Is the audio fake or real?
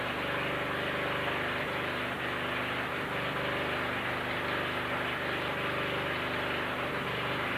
real